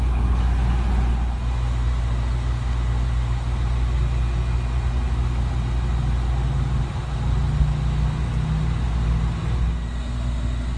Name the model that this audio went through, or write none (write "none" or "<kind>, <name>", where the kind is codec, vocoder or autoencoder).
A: none